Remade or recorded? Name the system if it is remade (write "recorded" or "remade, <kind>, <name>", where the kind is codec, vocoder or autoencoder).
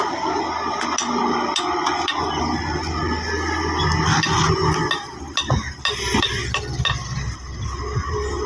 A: recorded